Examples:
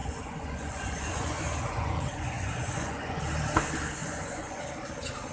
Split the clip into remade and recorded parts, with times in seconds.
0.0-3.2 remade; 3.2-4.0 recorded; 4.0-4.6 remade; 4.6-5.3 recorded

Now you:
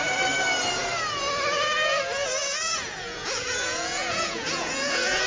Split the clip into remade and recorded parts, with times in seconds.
0.0-2.4 recorded; 2.4-5.3 remade

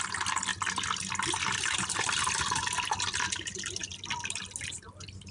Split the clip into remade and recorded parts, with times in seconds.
0.0-5.3 recorded

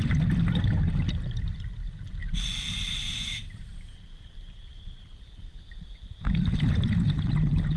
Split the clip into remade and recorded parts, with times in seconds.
0.0-2.2 recorded; 2.2-6.9 remade; 6.9-7.8 recorded

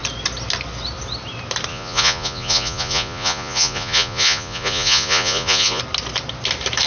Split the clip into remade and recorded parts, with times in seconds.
0.0-1.7 recorded; 1.7-5.8 remade; 5.8-6.9 recorded

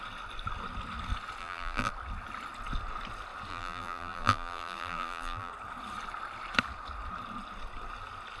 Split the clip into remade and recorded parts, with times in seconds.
0.0-1.4 recorded; 1.4-1.9 remade; 1.9-3.5 recorded; 3.5-5.5 remade; 5.5-8.4 recorded